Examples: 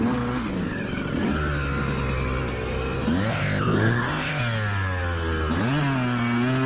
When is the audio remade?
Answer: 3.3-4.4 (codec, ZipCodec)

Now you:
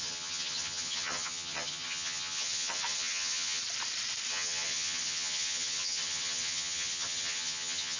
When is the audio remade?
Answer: 0.0-3.6 (vocoder, HiFi-GAN); 4.3-8.0

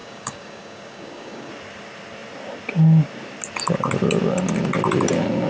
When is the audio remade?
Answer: 0.0-1.5 (codec, DAC)

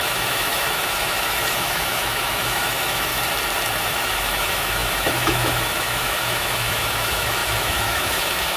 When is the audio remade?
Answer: 0.0-3.1 (autoencoder, DAC-VAE); 3.8-8.6

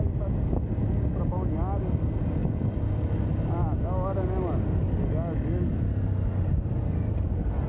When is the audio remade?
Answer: none

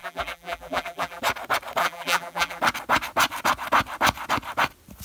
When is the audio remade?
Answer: 0.0-1.2 (vocoder, BigVGAN v2); 1.8-2.6

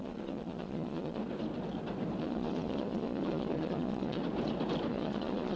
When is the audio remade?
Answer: 0.0-1.2 (vocoder, Vocos); 2.2-4.2; 4.9-5.6